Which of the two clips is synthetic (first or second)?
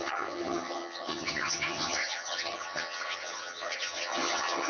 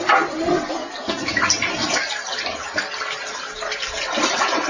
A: first